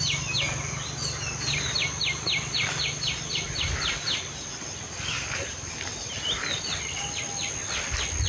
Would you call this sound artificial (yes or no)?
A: no